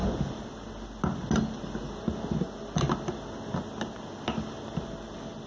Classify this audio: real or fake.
real